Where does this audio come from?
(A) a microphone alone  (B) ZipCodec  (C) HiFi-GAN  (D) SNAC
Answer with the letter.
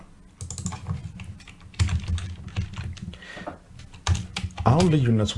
A